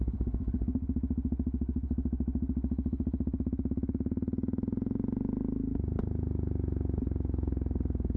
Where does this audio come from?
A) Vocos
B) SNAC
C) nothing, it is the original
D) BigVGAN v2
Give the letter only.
C